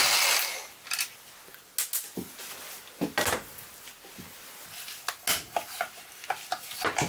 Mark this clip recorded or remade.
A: recorded